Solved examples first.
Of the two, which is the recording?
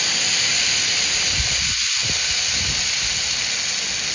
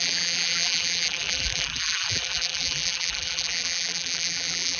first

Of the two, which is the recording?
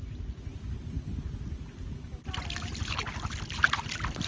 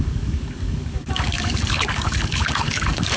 first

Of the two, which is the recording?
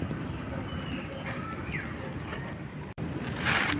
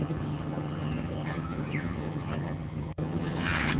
first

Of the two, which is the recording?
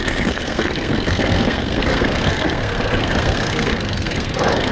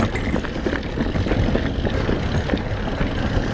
second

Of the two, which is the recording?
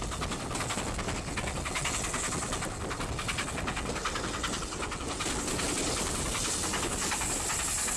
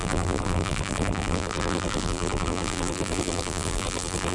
first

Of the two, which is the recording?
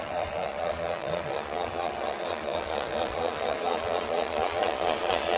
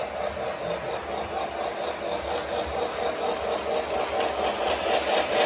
second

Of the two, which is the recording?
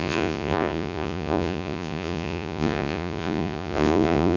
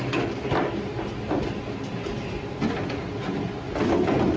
second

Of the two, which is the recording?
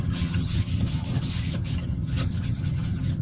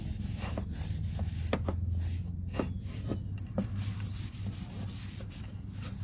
second